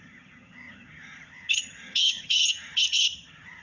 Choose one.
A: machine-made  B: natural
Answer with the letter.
A